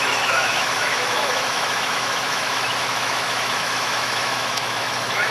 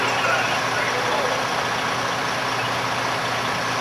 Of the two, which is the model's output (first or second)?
first